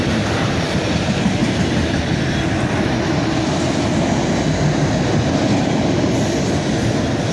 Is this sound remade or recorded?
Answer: recorded